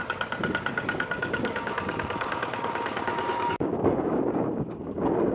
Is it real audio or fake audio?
fake